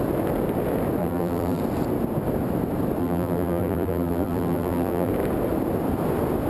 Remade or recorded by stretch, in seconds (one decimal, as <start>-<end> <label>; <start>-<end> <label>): 0.0-1.0 recorded; 1.0-1.6 remade; 1.6-3.0 recorded; 3.0-5.1 remade; 5.1-6.5 recorded